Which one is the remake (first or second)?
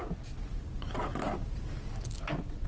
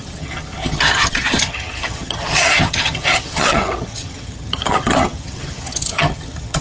second